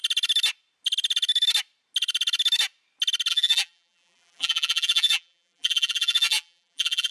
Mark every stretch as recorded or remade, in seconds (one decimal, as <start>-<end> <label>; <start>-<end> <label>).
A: 0.0-3.3 recorded; 3.3-7.1 remade